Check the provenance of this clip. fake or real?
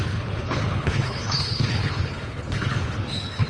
fake